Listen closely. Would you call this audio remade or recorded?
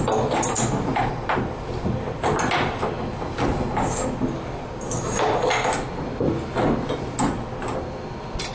recorded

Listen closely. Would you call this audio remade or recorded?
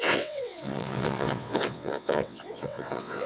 remade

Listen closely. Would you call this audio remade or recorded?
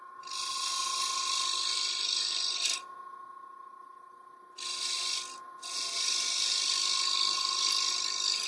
recorded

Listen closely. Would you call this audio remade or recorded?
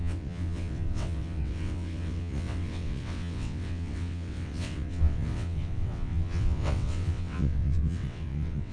remade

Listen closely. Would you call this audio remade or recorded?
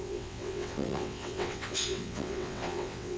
remade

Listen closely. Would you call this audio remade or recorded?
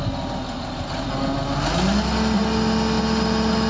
recorded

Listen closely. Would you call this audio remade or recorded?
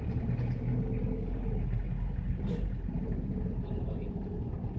recorded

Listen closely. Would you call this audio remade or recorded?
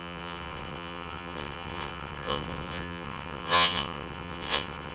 remade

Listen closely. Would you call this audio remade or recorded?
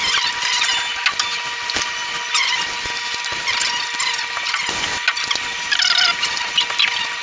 recorded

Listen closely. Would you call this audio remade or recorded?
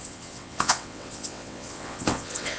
remade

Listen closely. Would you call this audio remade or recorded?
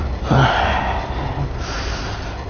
recorded